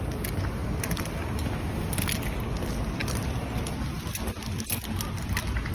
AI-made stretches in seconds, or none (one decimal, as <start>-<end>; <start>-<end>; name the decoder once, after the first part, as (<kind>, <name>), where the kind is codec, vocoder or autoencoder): none